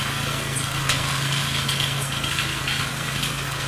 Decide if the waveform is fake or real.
fake